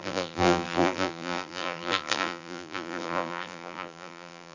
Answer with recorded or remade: remade